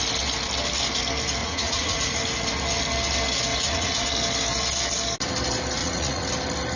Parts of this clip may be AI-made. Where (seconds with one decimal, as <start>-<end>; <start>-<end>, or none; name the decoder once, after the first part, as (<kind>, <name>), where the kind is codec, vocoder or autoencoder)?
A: 1.4-2.2 (vocoder, Vocos); 3.5-4.1; 5.8-6.3